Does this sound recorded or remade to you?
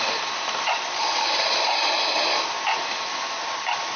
recorded